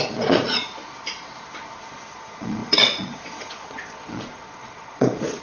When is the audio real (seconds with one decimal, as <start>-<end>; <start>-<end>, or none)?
0.7-1.8